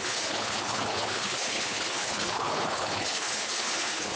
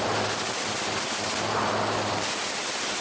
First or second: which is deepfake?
first